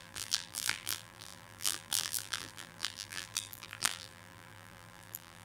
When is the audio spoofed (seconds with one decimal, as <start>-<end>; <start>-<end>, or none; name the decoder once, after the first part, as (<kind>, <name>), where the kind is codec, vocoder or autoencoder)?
0.0-5.4 (vocoder, BigVGAN v2)